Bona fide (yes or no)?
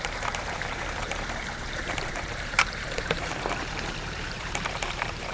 no